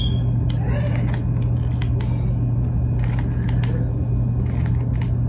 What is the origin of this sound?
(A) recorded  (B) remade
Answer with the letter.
A